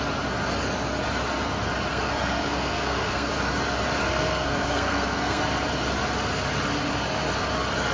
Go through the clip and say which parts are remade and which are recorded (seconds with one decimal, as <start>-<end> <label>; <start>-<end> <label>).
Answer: 0.0-1.9 recorded; 1.9-3.3 remade; 3.3-4.0 recorded; 4.0-5.4 remade; 5.4-7.9 recorded